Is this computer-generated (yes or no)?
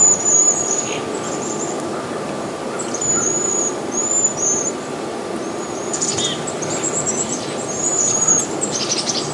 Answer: yes